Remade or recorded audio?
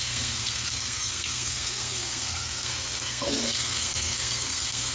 remade